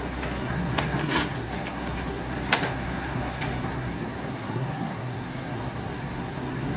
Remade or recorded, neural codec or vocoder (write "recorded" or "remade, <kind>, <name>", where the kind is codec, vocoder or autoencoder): remade, codec, SNAC